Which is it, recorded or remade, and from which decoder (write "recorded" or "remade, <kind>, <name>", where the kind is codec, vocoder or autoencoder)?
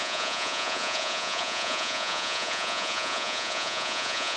remade, vocoder, Vocos